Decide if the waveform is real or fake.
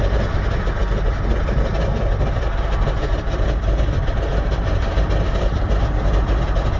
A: real